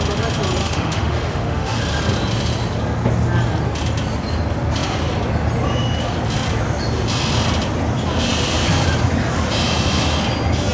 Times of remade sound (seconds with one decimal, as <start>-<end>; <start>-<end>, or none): 0.6-1.8